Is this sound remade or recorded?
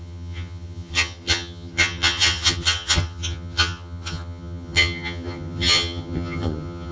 remade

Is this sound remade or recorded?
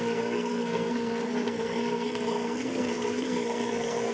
remade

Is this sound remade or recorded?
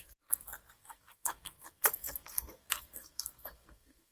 remade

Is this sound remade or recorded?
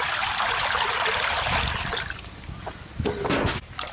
recorded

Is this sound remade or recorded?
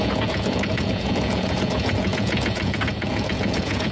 remade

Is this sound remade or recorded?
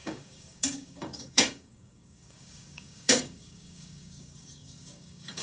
remade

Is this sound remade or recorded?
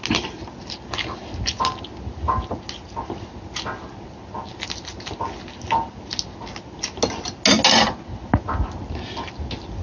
recorded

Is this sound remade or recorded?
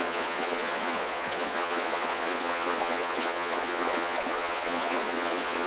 remade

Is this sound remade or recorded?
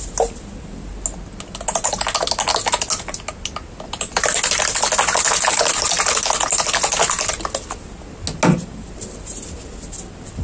recorded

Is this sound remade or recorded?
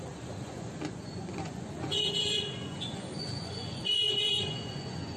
remade